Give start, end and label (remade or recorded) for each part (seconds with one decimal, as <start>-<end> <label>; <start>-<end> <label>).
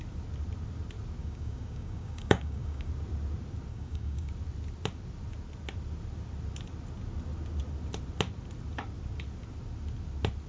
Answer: 0.0-1.2 recorded; 1.2-2.9 remade; 2.9-3.7 recorded; 3.7-4.3 remade; 4.3-10.5 recorded